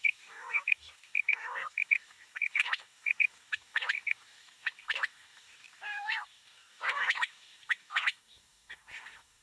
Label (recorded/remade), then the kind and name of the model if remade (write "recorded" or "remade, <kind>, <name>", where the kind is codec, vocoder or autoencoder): remade, codec, DAC